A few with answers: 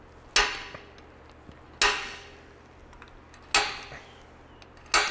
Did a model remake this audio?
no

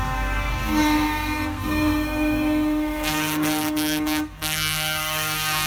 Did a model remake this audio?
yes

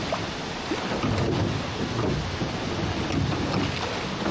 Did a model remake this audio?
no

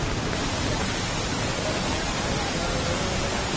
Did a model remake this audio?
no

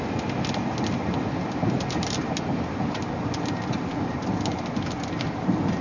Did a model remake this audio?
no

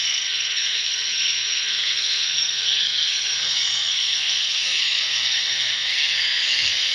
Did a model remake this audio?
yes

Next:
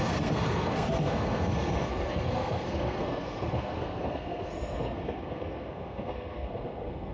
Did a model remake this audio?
yes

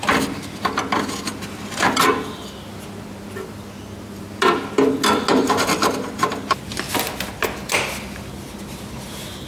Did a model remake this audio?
no